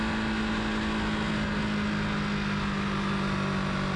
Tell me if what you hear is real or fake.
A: real